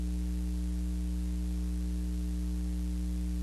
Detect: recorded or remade recorded